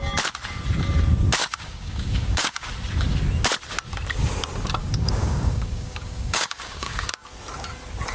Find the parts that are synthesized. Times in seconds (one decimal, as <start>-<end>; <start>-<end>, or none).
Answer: 1.4-2.7; 4.8-7.2